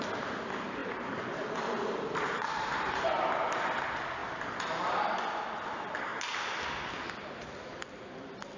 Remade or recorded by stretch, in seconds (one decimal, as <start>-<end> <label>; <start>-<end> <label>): 0.0-0.8 recorded; 0.8-3.6 remade; 3.6-4.2 recorded; 4.2-5.5 remade; 5.5-8.6 recorded